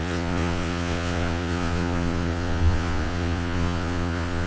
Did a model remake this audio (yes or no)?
yes